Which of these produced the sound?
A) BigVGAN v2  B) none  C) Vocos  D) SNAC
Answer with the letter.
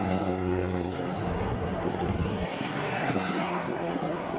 D